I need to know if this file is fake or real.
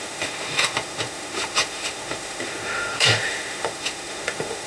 fake